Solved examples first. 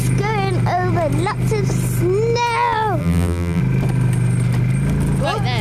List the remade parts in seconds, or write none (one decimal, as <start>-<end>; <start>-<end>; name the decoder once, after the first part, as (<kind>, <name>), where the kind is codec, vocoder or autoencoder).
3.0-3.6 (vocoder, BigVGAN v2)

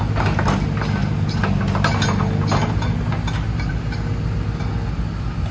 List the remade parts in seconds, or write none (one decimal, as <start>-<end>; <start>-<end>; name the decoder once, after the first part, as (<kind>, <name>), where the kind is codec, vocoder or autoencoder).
none

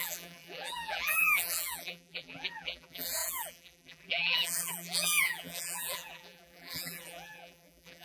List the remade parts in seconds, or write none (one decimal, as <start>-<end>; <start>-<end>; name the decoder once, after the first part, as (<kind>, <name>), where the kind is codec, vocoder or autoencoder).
0.0-8.0 (vocoder, BigVGAN v2)